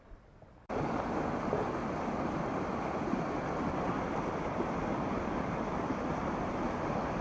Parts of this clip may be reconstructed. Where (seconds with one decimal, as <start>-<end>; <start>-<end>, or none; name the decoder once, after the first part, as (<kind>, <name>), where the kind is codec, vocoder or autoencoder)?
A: 4.9-5.7 (codec, DAC)